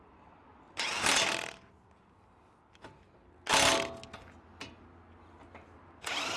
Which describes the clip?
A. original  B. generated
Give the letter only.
A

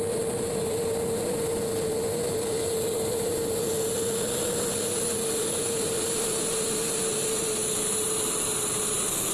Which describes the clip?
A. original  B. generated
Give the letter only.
A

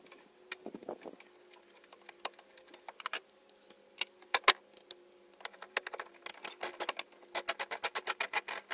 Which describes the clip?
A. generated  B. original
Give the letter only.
B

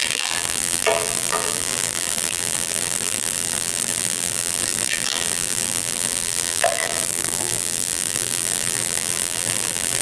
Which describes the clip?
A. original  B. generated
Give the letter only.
B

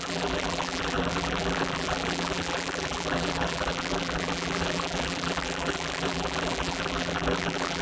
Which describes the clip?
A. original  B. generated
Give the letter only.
B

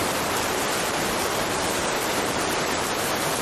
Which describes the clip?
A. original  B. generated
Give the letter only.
B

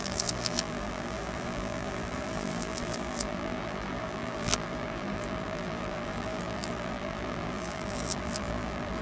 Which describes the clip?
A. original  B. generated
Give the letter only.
B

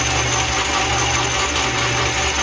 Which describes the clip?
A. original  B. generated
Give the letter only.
A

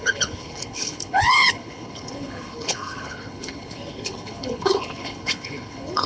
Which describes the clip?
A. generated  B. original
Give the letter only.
A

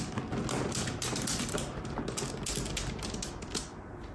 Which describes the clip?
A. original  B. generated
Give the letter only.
A